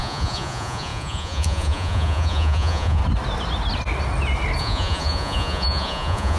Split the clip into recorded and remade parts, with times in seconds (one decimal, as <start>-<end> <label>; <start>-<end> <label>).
0.0-3.0 remade; 3.0-4.6 recorded; 4.6-6.4 remade